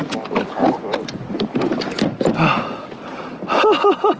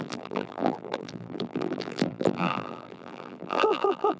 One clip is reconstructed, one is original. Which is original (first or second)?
first